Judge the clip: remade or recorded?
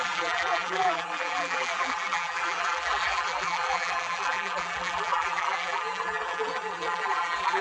remade